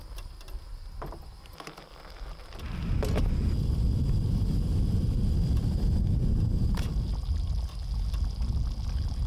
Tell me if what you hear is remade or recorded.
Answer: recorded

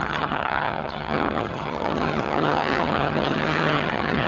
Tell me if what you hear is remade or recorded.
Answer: remade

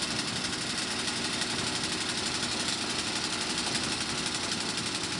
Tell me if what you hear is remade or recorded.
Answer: recorded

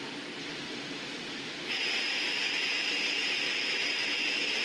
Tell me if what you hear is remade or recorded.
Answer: remade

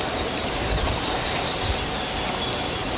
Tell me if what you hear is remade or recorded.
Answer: recorded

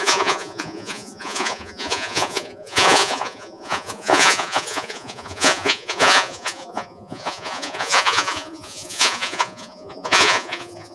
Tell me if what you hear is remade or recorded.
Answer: remade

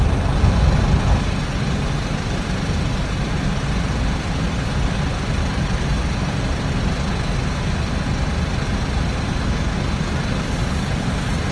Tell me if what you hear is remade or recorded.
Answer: recorded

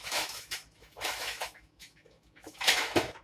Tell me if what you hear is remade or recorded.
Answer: remade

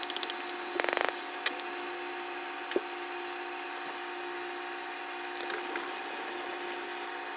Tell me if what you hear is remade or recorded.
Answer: recorded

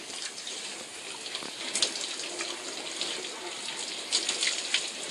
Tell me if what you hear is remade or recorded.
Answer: recorded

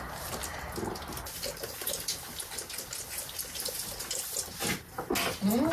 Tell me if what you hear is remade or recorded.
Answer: recorded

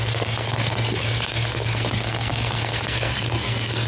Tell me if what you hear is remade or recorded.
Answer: remade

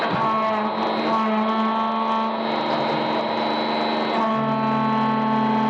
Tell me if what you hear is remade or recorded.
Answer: recorded